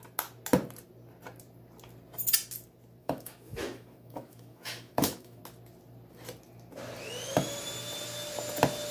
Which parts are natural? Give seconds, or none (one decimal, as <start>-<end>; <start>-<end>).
0.0-3.0; 5.4-8.9